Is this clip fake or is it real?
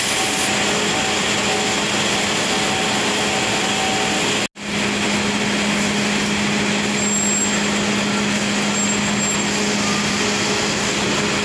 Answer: real